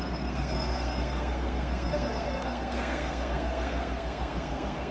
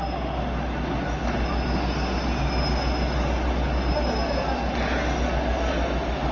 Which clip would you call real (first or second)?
second